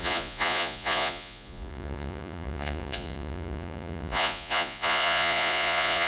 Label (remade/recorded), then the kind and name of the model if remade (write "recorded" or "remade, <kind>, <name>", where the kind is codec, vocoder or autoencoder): remade, vocoder, Vocos